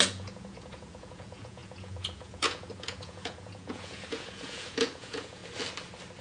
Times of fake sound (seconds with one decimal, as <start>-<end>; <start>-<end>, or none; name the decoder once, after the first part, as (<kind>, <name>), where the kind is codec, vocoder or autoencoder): 0.0-5.4 (vocoder, Vocos)